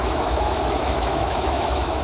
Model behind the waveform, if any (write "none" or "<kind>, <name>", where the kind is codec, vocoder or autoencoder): autoencoder, DAC-VAE